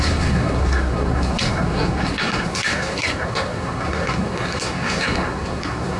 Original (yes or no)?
no